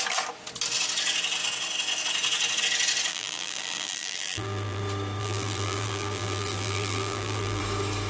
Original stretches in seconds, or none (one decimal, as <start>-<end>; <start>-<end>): 0.0-3.1; 4.8-5.2; 7.6-8.1